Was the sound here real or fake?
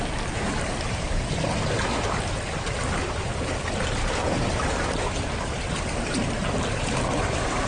real